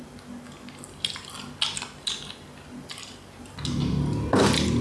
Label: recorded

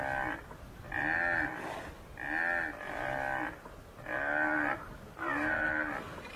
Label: recorded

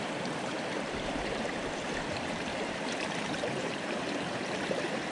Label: remade